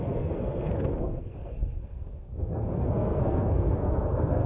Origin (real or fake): fake